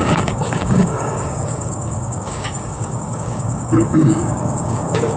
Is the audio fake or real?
fake